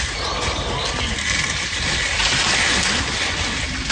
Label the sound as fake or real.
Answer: real